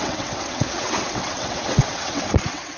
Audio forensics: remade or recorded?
remade